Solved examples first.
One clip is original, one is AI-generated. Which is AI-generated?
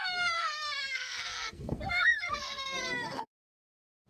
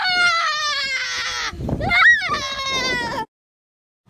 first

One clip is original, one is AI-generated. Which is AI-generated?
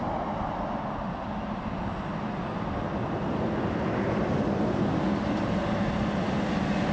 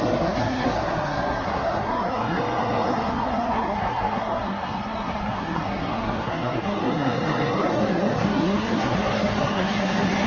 second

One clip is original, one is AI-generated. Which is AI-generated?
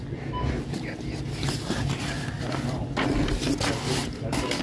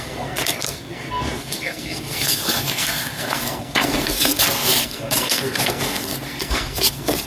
second